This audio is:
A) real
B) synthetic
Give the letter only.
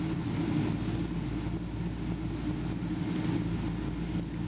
A